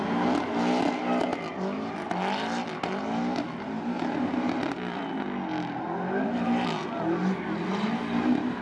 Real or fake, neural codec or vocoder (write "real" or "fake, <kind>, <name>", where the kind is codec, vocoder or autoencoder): real